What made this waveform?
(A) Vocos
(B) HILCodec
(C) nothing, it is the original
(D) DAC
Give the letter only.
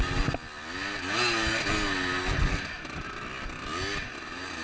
C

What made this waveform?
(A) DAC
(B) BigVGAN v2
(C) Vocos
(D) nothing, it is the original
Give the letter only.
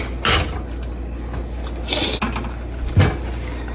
D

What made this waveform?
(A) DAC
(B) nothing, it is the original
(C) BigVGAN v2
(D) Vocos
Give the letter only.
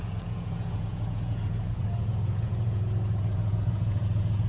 D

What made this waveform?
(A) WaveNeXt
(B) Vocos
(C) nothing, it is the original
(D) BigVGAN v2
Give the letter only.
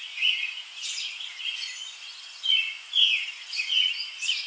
B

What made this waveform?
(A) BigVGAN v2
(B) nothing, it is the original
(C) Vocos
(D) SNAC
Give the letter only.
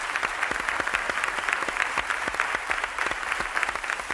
B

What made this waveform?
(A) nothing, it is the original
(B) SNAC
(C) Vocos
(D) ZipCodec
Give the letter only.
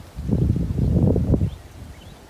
A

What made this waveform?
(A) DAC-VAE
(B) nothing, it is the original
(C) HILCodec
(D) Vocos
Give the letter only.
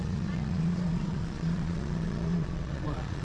D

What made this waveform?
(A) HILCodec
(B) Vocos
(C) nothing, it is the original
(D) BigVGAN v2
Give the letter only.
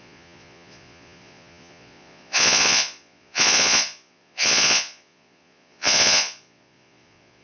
B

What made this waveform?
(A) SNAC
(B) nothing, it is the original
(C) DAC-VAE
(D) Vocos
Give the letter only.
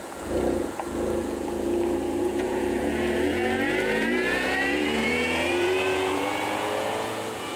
D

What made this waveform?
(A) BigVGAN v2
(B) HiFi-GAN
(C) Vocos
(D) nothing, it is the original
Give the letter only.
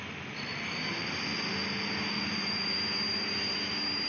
D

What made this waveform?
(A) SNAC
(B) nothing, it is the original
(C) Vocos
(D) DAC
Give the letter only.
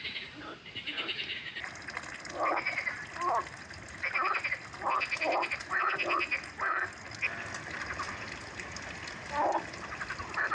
B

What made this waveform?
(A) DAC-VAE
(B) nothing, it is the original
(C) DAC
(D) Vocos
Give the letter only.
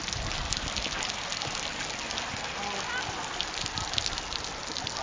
B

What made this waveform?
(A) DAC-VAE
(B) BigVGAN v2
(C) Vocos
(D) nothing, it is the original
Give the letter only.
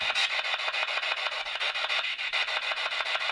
C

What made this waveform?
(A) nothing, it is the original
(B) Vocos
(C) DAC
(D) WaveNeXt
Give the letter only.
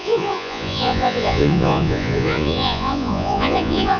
B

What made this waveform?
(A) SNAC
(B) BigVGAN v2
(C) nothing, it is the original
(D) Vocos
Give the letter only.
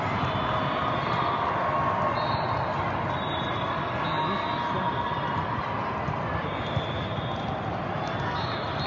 C